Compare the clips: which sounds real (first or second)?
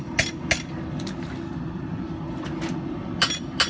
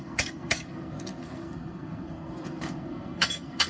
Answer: first